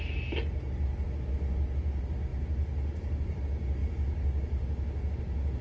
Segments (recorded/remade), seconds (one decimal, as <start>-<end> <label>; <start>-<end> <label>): 0.0-2.3 recorded; 2.3-3.4 remade; 3.4-5.6 recorded